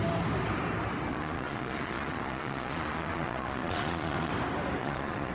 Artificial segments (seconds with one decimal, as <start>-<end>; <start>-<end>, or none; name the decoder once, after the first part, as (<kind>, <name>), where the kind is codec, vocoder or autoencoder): 1.1-4.3 (vocoder, Vocos); 4.8-5.3